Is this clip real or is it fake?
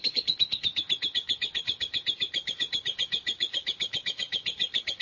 fake